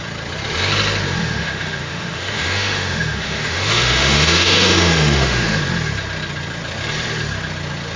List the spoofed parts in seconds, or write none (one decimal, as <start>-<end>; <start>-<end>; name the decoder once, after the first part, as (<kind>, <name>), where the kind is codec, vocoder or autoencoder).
1.2-5.6 (autoencoder, DAC-VAE)